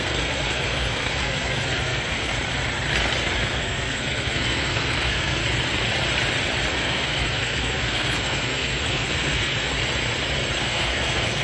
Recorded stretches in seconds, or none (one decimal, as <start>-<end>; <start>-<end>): 2.3-3.3; 5.4-6.7; 9.7-10.6